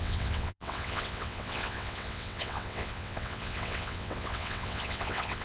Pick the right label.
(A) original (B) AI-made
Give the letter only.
B